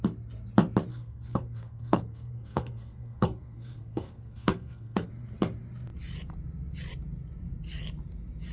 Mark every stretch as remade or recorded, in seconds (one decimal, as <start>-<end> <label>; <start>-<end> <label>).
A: 0.0-0.9 recorded; 0.9-5.1 remade; 5.1-8.5 recorded